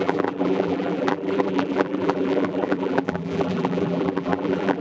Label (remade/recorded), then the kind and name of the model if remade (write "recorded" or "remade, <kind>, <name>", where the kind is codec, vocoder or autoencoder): remade, vocoder, BigVGAN v2